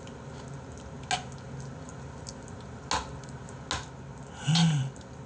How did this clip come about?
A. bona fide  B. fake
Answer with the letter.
A